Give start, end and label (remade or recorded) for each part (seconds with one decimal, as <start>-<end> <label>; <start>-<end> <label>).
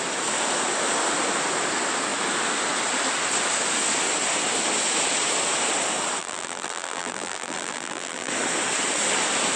0.0-6.2 recorded; 6.2-8.3 remade; 8.3-9.6 recorded